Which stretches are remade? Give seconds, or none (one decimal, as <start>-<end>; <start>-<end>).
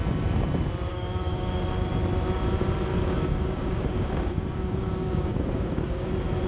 0.9-1.6; 2.9-6.1